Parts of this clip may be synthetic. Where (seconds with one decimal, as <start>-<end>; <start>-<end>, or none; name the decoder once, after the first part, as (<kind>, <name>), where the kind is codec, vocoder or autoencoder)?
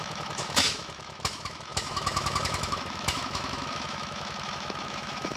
0.0-5.4 (autoencoder, DAC-VAE)